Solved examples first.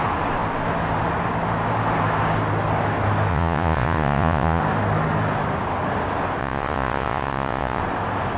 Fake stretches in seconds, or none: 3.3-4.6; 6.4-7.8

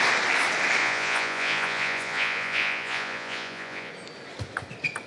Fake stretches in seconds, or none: 0.8-3.9

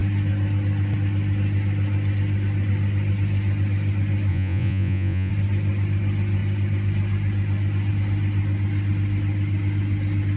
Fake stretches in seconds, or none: 4.3-5.3